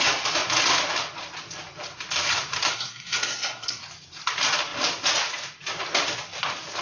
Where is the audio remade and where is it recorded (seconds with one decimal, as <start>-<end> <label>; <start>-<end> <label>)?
0.0-2.7 recorded; 2.7-3.8 remade; 3.8-6.8 recorded